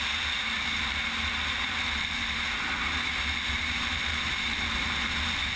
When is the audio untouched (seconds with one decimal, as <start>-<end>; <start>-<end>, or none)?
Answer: 2.2-2.9